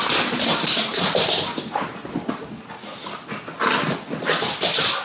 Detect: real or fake real